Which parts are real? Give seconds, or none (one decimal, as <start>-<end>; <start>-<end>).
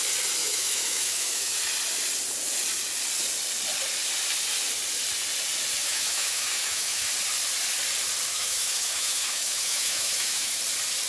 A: 0.0-0.4; 1.6-5.8; 7.1-8.3; 10.6-11.1